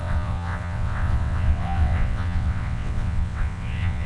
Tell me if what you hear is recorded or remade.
remade